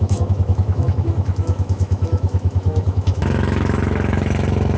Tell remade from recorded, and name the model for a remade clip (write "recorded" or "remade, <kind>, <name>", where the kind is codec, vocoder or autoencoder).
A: remade, autoencoder, DAC-VAE